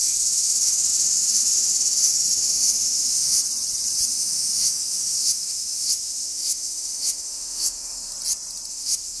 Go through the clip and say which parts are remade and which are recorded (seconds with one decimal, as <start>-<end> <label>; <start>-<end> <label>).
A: 0.0-3.4 remade; 3.4-4.1 recorded; 4.1-8.1 remade; 8.1-8.7 recorded; 8.7-9.2 remade